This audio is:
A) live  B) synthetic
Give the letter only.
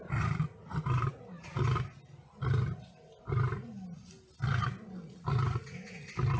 A